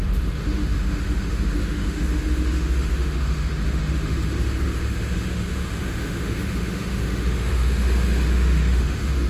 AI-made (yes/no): yes